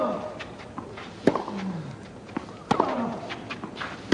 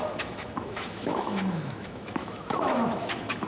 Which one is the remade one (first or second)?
second